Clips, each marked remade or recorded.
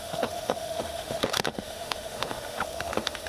remade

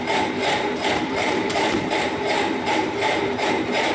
remade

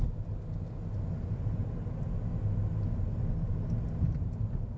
recorded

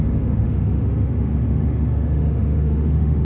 remade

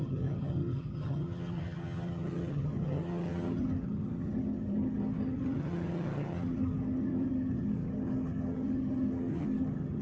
remade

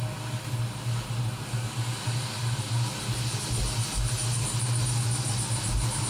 recorded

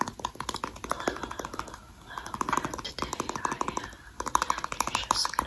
recorded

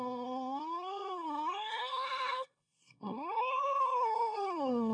remade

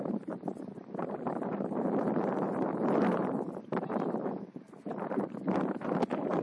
remade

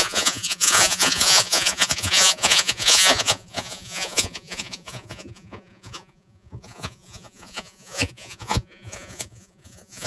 remade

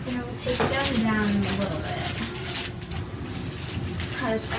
recorded